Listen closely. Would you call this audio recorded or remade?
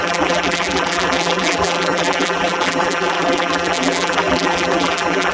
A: remade